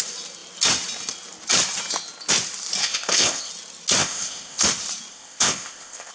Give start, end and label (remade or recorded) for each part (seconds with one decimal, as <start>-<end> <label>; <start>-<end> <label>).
0.0-2.8 recorded; 2.8-3.5 remade; 3.5-4.0 recorded; 4.0-4.6 remade; 4.6-5.1 recorded; 5.1-6.1 remade

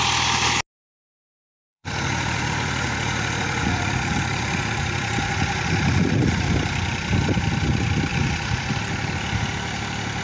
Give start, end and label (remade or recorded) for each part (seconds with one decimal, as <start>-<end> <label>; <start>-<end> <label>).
0.0-1.4 recorded; 1.4-6.5 remade; 6.5-8.1 recorded; 8.1-8.7 remade; 8.7-10.2 recorded

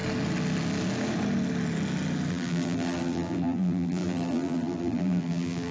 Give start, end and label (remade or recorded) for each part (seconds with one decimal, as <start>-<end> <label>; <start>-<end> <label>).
0.0-2.3 recorded; 2.3-5.7 remade

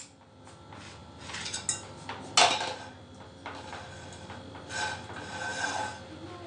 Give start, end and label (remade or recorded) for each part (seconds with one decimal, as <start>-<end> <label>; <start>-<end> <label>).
0.0-6.5 recorded

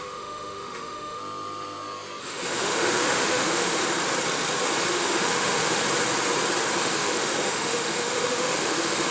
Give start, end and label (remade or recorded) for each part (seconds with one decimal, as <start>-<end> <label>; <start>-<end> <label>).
0.0-1.2 remade; 1.2-2.2 recorded; 2.2-3.8 remade; 3.8-4.9 recorded; 4.9-5.8 remade; 5.8-6.8 recorded; 6.8-9.1 remade

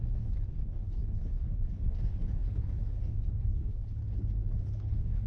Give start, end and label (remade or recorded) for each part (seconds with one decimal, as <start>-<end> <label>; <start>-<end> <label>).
0.0-4.0 remade; 4.0-4.6 recorded; 4.6-5.3 remade